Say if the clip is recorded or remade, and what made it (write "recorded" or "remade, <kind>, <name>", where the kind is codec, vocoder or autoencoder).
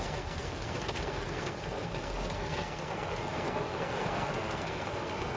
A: remade, codec, SNAC